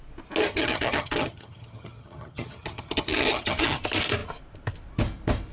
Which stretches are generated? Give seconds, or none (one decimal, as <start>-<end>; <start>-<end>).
0.5-3.8